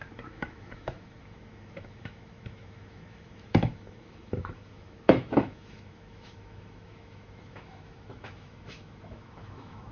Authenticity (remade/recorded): remade